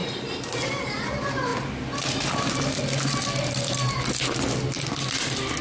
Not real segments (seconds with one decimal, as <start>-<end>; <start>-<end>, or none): none